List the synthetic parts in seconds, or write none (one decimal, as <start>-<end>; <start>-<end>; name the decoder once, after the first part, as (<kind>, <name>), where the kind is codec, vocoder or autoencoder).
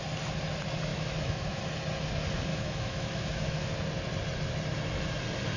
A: 0.9-1.6 (autoencoder, DAC-VAE); 2.5-3.7